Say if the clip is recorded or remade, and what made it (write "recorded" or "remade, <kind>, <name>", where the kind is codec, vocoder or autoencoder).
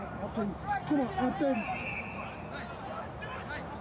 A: recorded